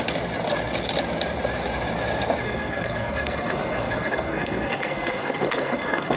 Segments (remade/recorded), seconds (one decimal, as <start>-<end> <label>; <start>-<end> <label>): 0.0-2.4 recorded; 2.4-6.2 remade